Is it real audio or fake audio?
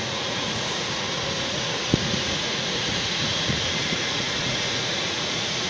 fake